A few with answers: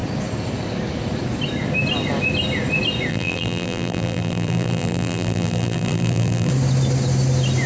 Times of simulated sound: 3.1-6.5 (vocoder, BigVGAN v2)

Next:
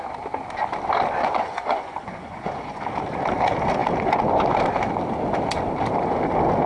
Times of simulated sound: 1.2-2.8 (vocoder, Vocos)